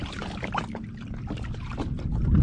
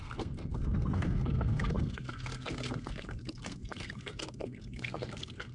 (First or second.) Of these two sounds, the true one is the first